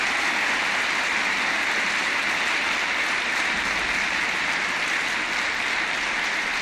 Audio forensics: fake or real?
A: real